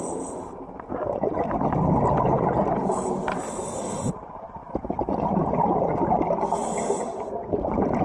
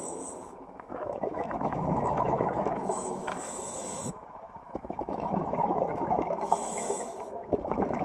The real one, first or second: first